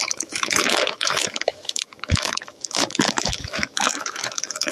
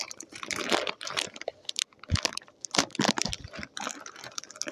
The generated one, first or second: first